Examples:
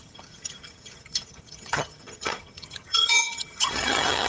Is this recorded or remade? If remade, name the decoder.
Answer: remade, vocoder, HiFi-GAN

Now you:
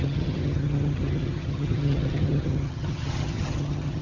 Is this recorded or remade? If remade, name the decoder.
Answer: remade, vocoder, HiFi-GAN